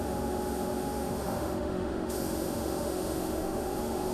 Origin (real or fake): fake